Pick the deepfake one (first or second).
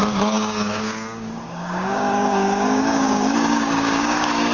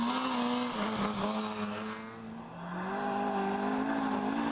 first